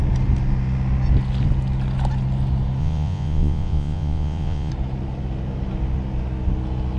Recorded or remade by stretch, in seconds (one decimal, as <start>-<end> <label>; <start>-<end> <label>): 0.0-2.8 recorded; 2.8-4.7 remade; 4.7-7.0 recorded

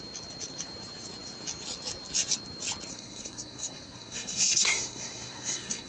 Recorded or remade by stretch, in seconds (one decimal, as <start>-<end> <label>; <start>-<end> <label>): 0.0-2.9 recorded; 2.9-5.9 remade

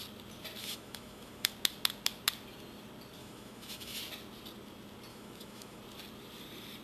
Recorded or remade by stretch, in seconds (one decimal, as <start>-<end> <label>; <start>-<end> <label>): 0.0-0.6 recorded; 0.6-1.5 remade; 1.5-3.2 recorded; 3.2-4.0 remade; 4.0-5.1 recorded; 5.1-5.8 remade; 5.8-6.8 recorded

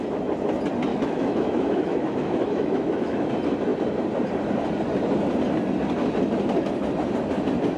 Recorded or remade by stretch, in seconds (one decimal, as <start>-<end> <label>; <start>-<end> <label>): 0.0-0.9 recorded; 0.9-3.3 remade; 3.3-7.8 recorded